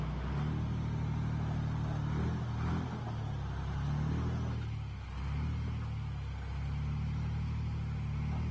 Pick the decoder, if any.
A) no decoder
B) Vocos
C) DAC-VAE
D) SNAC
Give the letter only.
A